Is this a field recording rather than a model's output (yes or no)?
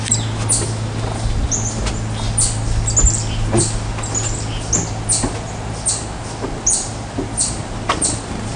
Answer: yes